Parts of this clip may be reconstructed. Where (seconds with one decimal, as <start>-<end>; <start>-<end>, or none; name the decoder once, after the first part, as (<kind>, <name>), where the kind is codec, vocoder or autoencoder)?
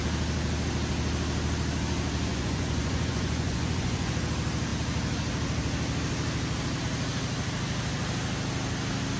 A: 2.3-4.2 (vocoder, Vocos)